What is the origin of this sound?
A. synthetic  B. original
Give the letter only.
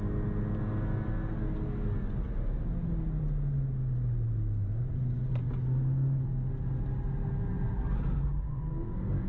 B